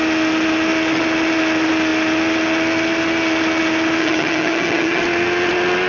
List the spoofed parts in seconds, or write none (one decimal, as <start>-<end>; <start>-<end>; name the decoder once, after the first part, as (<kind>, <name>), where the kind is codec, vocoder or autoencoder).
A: 4.0-5.0 (vocoder, HiFi-GAN)